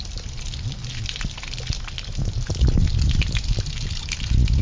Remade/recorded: recorded